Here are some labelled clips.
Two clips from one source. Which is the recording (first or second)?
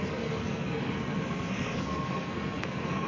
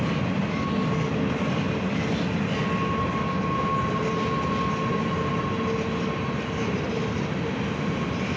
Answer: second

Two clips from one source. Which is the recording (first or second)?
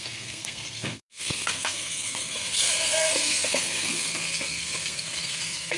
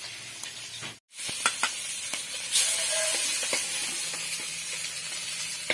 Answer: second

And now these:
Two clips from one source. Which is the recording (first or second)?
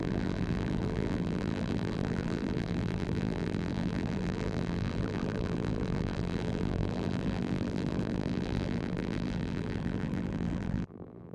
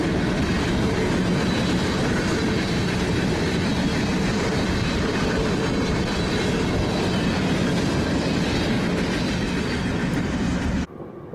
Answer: second